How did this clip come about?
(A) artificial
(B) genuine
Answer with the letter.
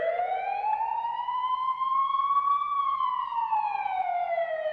A